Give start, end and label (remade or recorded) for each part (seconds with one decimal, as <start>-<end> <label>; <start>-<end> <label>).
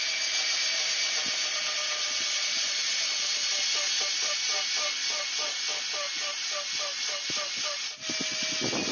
0.0-8.9 recorded